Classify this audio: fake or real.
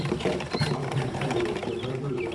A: fake